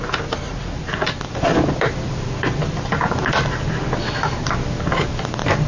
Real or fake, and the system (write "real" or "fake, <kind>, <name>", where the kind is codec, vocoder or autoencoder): real